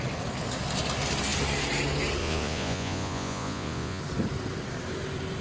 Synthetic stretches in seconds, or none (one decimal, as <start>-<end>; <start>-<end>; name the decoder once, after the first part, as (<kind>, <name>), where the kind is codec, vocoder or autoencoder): 2.2-4.0 (vocoder, Vocos)